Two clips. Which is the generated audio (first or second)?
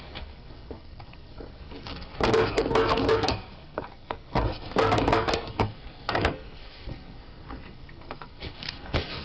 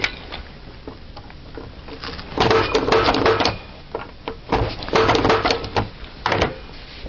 first